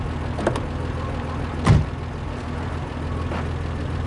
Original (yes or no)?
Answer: yes